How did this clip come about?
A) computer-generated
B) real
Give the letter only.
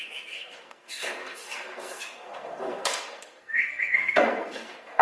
A